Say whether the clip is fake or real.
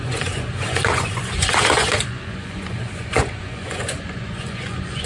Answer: fake